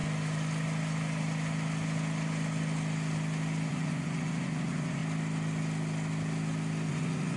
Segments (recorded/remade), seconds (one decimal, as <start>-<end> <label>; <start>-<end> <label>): 0.0-3.7 recorded; 3.7-5.0 remade; 5.0-6.9 recorded; 6.9-7.4 remade